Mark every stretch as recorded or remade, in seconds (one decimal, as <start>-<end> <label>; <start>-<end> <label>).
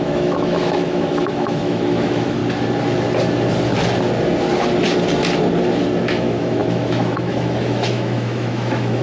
0.0-2.4 remade; 2.4-6.0 recorded; 6.0-9.0 remade